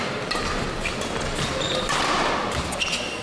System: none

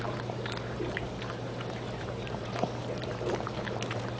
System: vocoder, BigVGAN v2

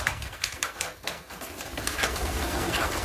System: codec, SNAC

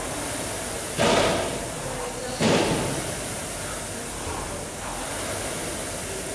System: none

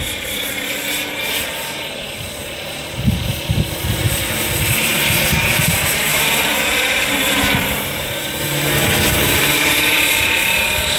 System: vocoder, BigVGAN v2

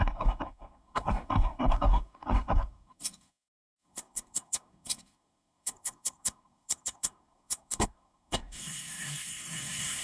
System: codec, SNAC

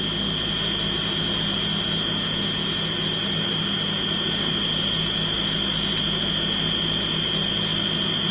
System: none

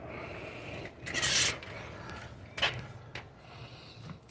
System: none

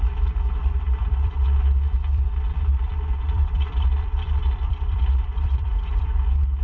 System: vocoder, BigVGAN v2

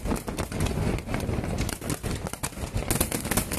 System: none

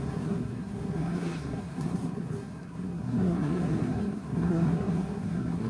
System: codec, SNAC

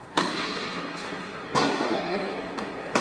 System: codec, SNAC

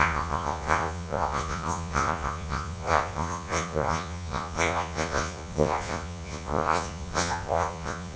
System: vocoder, Vocos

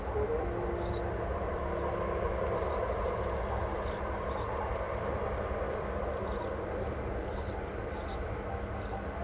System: none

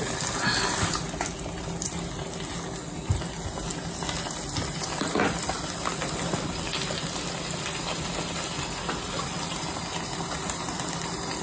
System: none